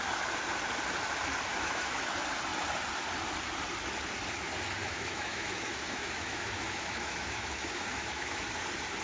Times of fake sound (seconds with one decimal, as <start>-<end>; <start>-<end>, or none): 1.5-2.1; 4.8-8.4